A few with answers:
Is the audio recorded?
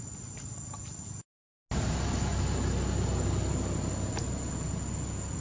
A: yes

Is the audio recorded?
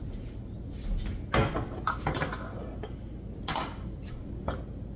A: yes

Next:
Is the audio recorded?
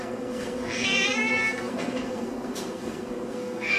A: no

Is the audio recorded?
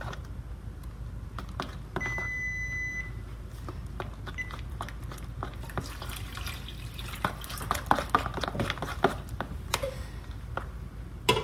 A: yes